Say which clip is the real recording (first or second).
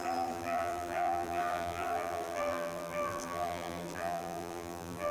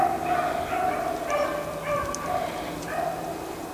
second